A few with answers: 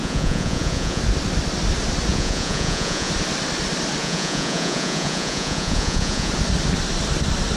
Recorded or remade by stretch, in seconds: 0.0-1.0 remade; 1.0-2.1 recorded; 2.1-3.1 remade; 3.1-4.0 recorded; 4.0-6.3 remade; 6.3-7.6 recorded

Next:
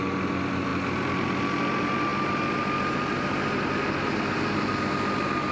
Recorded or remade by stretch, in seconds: 0.0-5.5 recorded